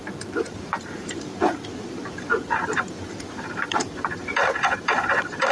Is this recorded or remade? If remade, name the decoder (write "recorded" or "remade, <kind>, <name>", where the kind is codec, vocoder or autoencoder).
remade, vocoder, BigVGAN v2